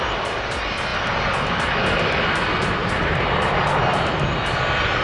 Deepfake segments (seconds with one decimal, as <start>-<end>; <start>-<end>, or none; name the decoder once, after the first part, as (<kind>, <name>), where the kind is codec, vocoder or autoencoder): 2.8-3.6 (vocoder, BigVGAN v2)